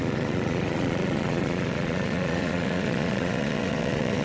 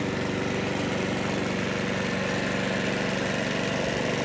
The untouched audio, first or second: second